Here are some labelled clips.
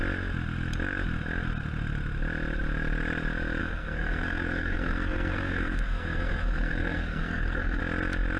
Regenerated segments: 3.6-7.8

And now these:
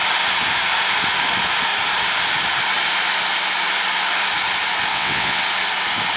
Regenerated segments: 4.9-5.4

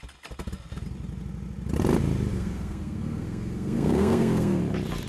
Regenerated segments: 2.3-4.6

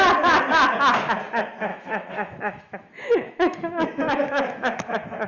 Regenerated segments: 1.7-5.3